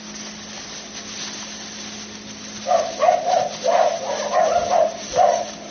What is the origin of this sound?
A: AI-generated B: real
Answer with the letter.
B